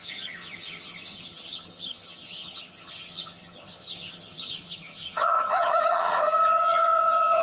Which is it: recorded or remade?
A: remade